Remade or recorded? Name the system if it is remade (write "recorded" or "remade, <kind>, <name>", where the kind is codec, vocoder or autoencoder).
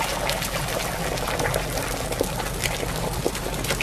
recorded